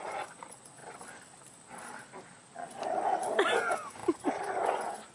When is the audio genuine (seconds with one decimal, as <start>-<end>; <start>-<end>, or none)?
0.8-3.6